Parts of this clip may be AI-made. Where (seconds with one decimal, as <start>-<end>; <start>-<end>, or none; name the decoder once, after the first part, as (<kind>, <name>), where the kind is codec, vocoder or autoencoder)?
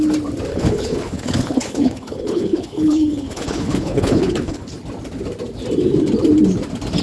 0.5-4.7 (codec, HILCodec)